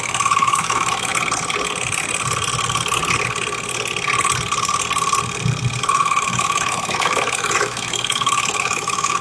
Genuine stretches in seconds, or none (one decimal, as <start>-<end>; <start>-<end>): 1.1-5.8

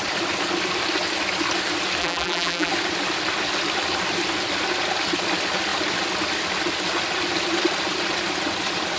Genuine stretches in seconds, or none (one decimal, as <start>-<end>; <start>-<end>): 0.0-2.0; 2.7-9.0

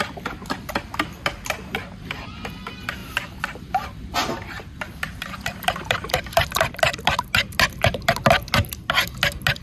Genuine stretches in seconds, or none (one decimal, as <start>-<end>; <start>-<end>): 0.0-3.0; 6.8-9.6

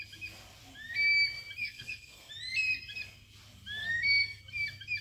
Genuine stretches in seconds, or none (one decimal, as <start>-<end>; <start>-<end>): 0.0-1.6; 2.3-3.8; 4.4-5.0

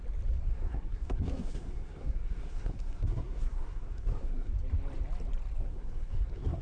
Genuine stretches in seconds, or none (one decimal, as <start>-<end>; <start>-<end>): 0.0-0.5; 4.5-5.6